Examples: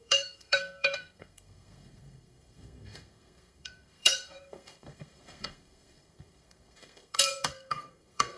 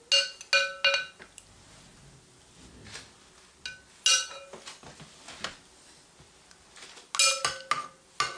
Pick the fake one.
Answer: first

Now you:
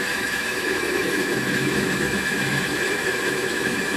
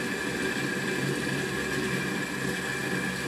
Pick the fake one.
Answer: first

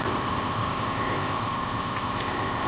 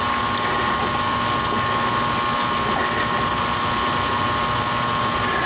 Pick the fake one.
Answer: first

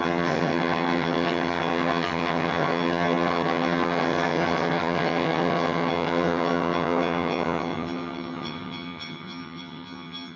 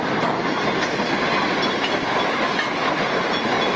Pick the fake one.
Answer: first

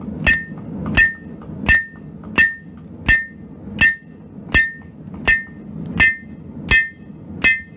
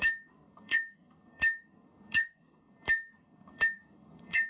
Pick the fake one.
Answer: second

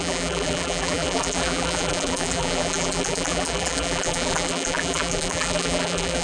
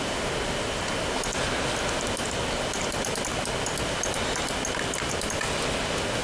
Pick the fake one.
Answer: first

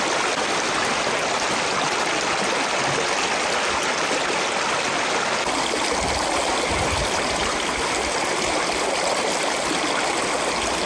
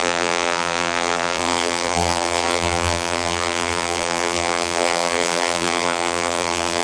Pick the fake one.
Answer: second